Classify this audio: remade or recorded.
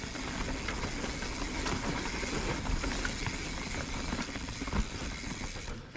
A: recorded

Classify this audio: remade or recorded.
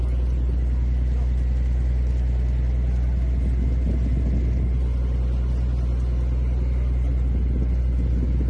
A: recorded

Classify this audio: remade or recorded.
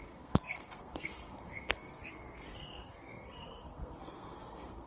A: remade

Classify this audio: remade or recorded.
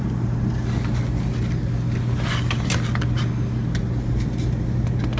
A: recorded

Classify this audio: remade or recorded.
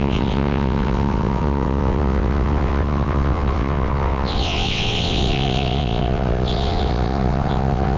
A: remade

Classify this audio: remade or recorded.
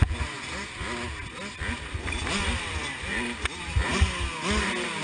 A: recorded